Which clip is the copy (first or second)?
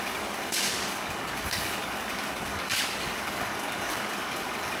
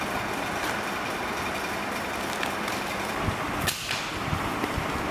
first